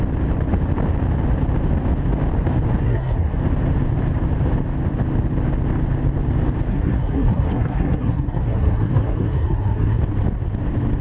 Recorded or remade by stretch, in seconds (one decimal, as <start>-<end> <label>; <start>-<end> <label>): 0.0-2.8 recorded; 2.8-3.4 remade; 3.4-6.7 recorded; 6.7-10.0 remade; 10.0-11.0 recorded